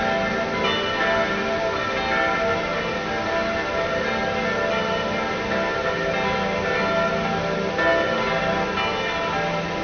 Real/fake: real